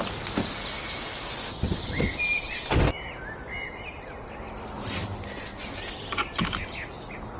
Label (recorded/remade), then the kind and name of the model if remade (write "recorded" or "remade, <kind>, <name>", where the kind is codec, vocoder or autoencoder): recorded